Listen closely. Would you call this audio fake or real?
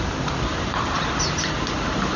real